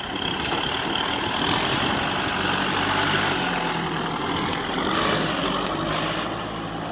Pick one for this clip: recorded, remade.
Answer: recorded